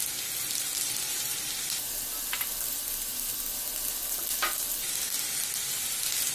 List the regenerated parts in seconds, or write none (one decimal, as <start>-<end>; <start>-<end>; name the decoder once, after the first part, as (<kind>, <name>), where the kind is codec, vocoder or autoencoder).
none